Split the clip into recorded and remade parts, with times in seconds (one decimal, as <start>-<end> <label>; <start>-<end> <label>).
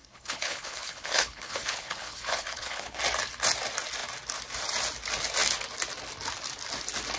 0.0-3.0 remade; 3.0-7.2 recorded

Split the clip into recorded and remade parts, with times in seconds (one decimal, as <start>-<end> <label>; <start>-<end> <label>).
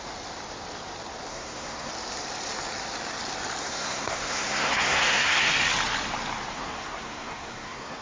0.0-1.3 recorded; 1.3-1.9 remade; 1.9-3.6 recorded; 3.6-5.5 remade; 5.5-6.5 recorded; 6.5-8.0 remade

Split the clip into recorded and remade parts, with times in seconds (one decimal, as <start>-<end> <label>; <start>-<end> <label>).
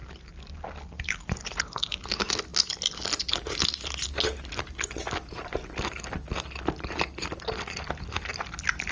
0.0-8.9 recorded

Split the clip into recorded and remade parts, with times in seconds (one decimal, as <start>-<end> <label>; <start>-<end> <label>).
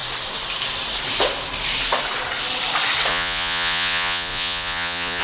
0.0-3.1 recorded; 3.1-5.2 remade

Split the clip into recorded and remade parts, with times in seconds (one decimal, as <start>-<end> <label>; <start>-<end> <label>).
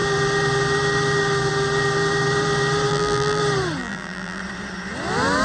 0.0-2.9 recorded; 2.9-3.4 remade; 3.4-3.8 recorded; 3.8-4.4 remade; 4.4-5.4 recorded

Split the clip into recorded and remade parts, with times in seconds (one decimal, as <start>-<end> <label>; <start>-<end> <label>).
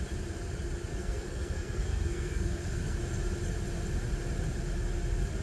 0.0-0.9 recorded; 0.9-3.0 remade; 3.0-5.4 recorded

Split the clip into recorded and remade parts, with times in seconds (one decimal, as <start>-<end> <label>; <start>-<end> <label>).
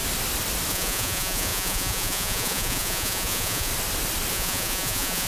0.0-0.7 recorded; 0.7-3.7 remade; 3.7-4.3 recorded; 4.3-5.3 remade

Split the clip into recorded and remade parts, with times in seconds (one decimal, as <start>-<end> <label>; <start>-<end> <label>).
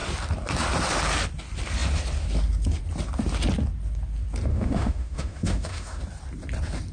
0.0-4.5 recorded; 4.5-6.0 remade; 6.0-6.9 recorded